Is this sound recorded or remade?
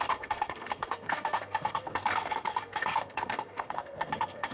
remade